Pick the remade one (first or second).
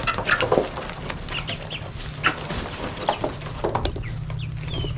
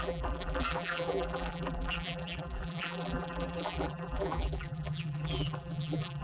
second